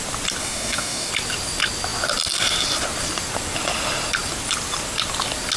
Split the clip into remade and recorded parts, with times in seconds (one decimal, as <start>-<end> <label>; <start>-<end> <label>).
0.0-0.4 recorded; 0.4-1.1 remade; 1.1-5.6 recorded

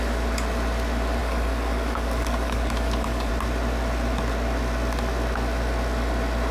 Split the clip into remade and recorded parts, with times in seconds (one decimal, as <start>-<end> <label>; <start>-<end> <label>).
0.0-1.2 recorded; 1.2-3.3 remade; 3.3-6.5 recorded